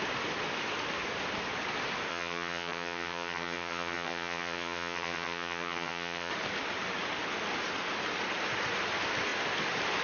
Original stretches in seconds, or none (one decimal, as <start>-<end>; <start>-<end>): 0.0-2.1; 6.3-10.0